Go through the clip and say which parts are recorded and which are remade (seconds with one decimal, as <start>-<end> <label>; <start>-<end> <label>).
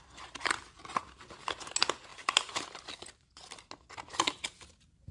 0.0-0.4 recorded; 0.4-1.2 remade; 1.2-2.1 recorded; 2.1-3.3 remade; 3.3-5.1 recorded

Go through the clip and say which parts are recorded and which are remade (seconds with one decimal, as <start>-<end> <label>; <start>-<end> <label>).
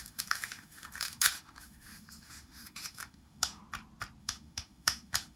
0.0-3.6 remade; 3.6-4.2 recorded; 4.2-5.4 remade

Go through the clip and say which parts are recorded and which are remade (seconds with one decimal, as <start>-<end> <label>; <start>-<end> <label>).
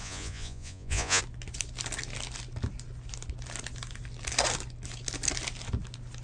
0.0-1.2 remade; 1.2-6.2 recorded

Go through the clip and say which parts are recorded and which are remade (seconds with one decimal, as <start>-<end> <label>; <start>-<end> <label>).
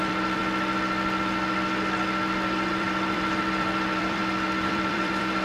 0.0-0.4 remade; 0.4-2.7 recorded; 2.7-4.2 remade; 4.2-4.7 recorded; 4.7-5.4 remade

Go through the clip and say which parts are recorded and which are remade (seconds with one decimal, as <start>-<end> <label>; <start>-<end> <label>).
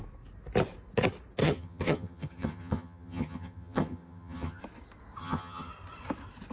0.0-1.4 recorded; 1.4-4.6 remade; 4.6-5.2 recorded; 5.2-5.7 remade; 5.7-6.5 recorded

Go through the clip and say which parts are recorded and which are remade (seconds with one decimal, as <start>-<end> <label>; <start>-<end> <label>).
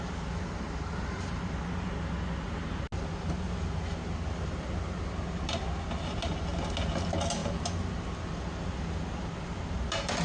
0.0-10.2 recorded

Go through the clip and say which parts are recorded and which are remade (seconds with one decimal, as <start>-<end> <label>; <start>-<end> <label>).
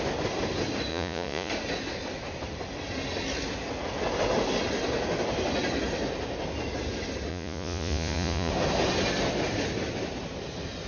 0.0-0.9 recorded; 0.9-1.5 remade; 1.5-7.3 recorded; 7.3-8.5 remade; 8.5-10.9 recorded